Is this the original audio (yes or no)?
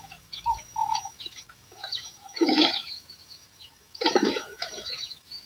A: no